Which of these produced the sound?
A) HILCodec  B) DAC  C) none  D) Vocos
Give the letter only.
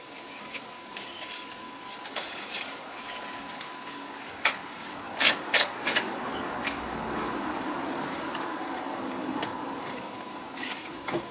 B